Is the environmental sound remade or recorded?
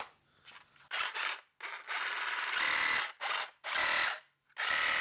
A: recorded